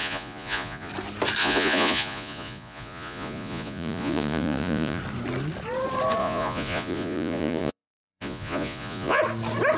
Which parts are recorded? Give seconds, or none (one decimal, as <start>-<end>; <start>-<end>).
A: 0.9-1.4; 5.0-6.2; 9.2-9.8